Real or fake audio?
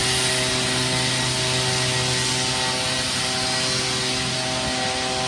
real